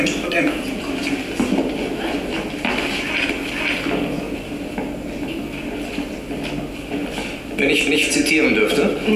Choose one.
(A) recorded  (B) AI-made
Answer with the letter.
A